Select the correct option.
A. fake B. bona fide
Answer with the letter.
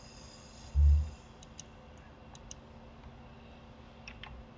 B